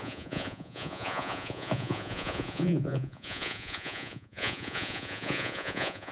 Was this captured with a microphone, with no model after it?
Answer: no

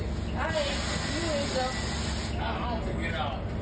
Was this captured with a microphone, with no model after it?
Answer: yes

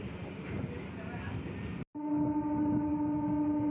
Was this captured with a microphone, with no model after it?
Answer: yes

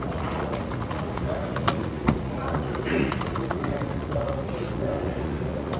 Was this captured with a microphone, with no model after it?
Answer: no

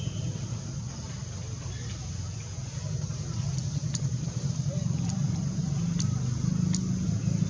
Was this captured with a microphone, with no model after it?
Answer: yes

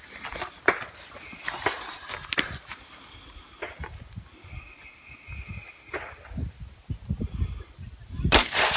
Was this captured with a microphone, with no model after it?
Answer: yes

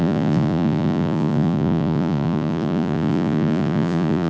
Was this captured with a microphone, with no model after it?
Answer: no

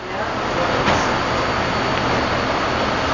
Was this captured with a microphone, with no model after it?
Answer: yes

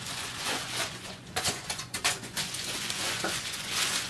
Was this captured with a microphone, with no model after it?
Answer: no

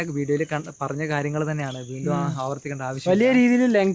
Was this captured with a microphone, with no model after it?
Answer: yes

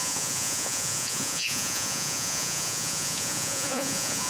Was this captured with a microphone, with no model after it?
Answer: no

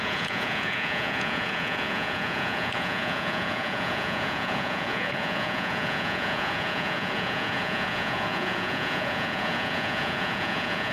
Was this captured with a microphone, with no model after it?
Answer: no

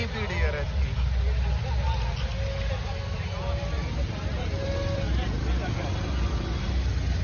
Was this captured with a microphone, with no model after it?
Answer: yes